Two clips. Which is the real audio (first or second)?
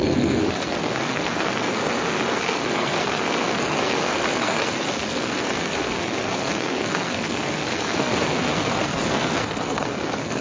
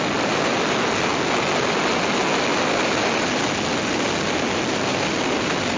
second